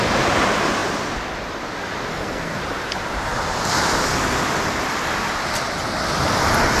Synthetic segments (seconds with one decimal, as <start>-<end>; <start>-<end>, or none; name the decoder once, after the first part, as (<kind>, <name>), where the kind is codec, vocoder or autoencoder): 2.1-2.6 (codec, SNAC)